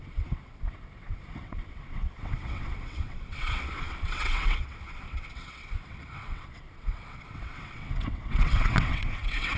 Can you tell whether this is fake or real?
fake